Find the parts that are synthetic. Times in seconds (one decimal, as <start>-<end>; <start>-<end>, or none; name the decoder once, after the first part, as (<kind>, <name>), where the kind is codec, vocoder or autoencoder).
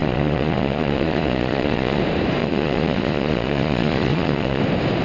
0.0-2.0 (vocoder, Vocos); 2.4-4.6